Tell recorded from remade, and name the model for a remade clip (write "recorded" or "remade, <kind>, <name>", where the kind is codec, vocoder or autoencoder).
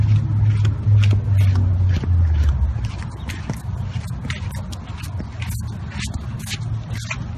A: recorded